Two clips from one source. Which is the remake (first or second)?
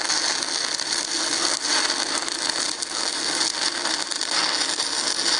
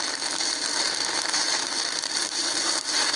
second